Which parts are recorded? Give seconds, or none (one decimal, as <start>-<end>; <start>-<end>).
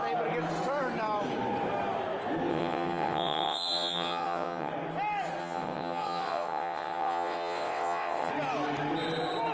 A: 0.0-2.5; 4.7-5.4; 8.3-9.5